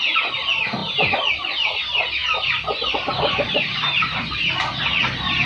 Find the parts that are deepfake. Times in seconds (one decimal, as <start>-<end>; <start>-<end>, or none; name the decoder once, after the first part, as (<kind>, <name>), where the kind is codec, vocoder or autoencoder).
2.2-5.5 (vocoder, BigVGAN v2)